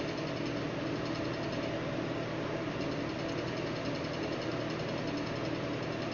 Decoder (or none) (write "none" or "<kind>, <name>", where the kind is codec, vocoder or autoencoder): none